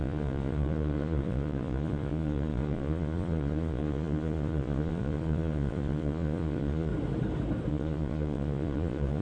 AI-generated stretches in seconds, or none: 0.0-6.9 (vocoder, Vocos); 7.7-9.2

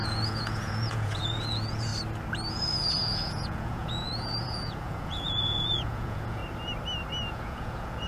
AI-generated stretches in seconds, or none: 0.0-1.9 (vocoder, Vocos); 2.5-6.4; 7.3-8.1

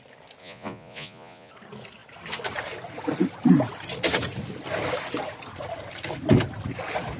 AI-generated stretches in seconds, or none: 0.4-1.5 (vocoder, Vocos)

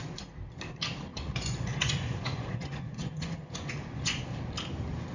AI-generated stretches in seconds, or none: 1.1-4.2 (vocoder, Vocos)